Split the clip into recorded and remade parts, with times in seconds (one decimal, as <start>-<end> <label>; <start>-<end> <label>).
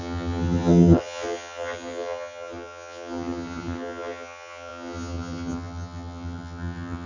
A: 0.0-7.1 remade